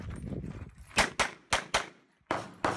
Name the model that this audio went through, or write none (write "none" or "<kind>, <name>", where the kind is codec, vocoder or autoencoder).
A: none